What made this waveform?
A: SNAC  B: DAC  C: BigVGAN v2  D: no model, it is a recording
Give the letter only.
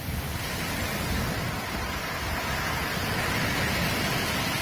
D